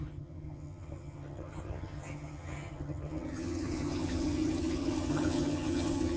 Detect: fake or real fake